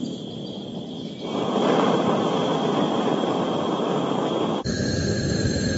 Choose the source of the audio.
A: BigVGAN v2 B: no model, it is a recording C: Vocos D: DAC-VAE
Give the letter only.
B